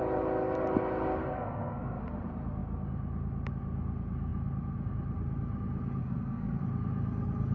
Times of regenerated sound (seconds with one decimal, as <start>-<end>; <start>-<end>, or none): 1.2-2.0; 6.0-6.6